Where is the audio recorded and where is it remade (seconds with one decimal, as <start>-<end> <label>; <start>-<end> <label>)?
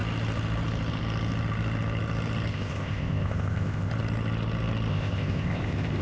0.0-2.5 recorded; 2.5-3.9 remade; 3.9-4.9 recorded; 4.9-6.0 remade